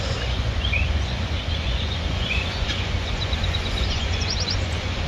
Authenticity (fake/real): fake